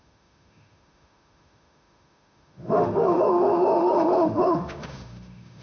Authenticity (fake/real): fake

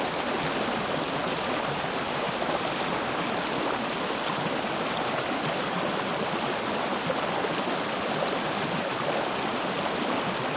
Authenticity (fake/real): real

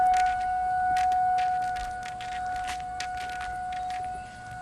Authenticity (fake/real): real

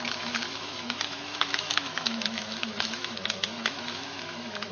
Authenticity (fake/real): fake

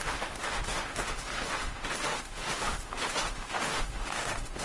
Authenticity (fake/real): fake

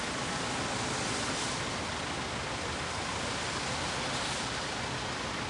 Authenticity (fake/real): real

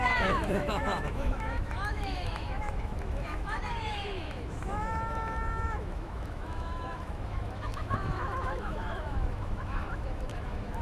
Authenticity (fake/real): fake